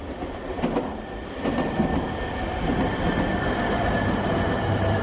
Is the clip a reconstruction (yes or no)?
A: no